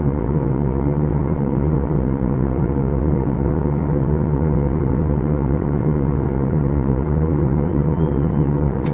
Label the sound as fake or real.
fake